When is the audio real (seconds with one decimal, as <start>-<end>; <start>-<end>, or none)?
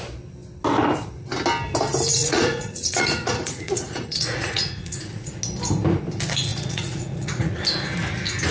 0.0-2.1; 5.4-6.5; 7.6-8.5